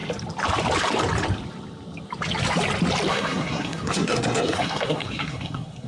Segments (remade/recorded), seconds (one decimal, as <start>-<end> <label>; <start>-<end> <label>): 0.0-3.1 recorded; 3.1-5.9 remade